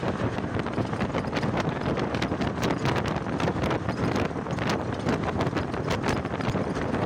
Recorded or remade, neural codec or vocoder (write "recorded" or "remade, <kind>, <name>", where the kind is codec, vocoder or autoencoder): recorded